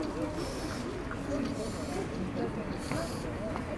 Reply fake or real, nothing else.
real